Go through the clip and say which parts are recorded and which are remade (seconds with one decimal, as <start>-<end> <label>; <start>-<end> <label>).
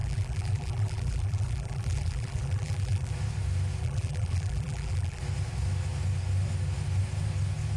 0.0-3.1 remade; 3.1-3.8 recorded; 3.8-5.2 remade; 5.2-7.8 recorded